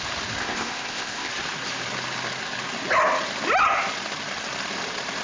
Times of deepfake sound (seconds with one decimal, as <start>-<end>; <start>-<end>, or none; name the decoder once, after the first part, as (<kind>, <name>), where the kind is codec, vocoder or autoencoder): 0.4-1.3 (codec, ZipCodec)